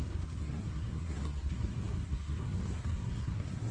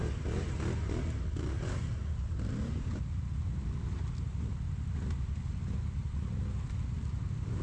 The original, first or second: second